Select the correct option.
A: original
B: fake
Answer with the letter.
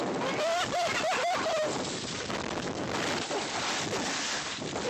B